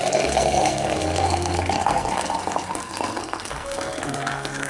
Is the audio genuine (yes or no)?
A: no